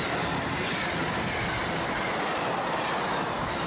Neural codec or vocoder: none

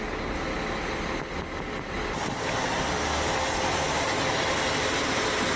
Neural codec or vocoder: none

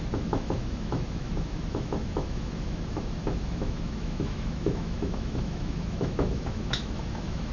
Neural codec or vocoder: autoencoder, DAC-VAE